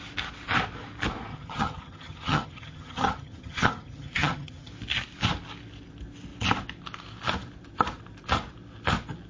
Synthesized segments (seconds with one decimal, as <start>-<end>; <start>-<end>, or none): 1.3-4.7